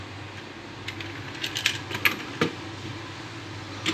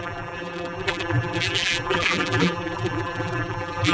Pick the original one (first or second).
first